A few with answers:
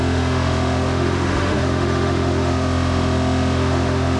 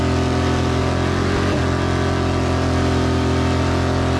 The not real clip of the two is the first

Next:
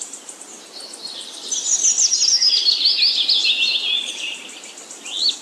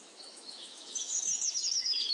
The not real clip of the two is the second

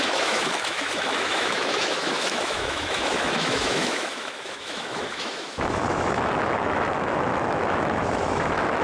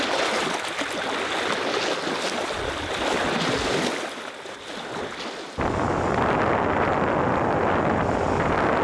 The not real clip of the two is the first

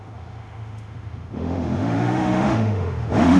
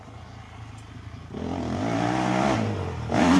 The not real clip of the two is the first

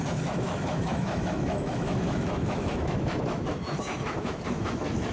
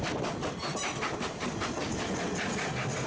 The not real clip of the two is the first